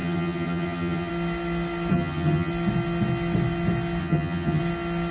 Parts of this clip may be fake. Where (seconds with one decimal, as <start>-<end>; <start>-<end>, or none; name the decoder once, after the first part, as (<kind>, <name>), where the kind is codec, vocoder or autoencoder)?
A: 0.0-1.1 (vocoder, HiFi-GAN); 1.9-2.5; 4.0-4.6